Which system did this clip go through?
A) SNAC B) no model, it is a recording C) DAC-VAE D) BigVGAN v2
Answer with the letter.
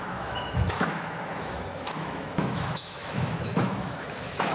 C